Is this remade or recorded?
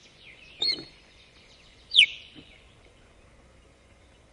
remade